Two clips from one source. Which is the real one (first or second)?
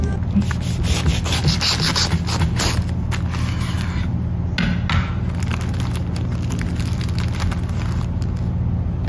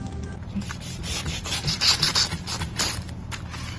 first